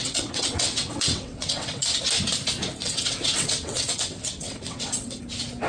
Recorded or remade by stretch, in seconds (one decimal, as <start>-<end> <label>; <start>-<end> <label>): 0.0-1.8 remade; 1.8-2.8 recorded; 2.8-5.2 remade; 5.2-5.7 recorded

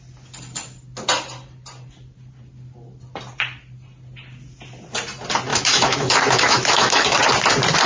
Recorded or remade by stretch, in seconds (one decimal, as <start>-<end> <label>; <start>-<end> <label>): 0.0-5.5 recorded; 5.5-7.2 remade; 7.2-7.9 recorded

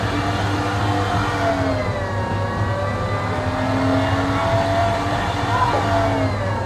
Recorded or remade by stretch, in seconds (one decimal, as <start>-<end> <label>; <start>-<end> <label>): 0.0-4.8 recorded; 4.8-5.5 remade; 5.5-6.7 recorded